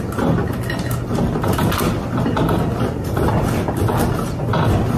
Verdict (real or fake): real